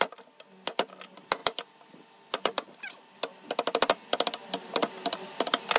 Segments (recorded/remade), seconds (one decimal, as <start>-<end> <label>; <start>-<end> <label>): 0.0-5.8 recorded